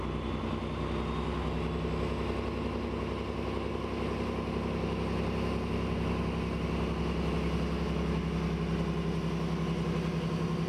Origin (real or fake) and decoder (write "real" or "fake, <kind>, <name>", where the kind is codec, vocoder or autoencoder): real